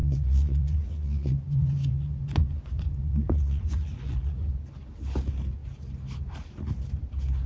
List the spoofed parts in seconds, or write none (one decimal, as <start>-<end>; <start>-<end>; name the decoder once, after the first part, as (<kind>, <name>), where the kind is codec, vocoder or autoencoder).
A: 0.0-4.5 (vocoder, Vocos)